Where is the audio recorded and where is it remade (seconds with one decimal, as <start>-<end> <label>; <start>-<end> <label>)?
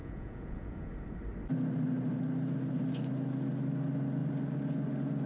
0.0-0.9 remade; 0.9-5.3 recorded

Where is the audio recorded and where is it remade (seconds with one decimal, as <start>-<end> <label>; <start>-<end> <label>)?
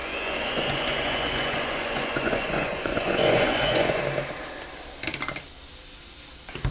0.0-4.0 remade; 4.0-6.7 recorded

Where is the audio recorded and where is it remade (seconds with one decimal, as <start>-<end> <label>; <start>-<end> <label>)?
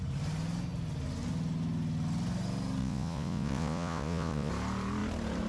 0.0-2.8 recorded; 2.8-4.5 remade; 4.5-5.5 recorded